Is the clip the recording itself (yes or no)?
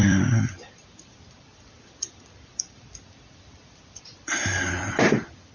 no